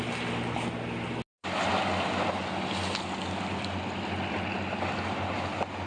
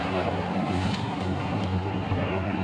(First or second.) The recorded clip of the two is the first